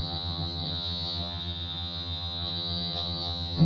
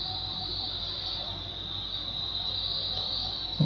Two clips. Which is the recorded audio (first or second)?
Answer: second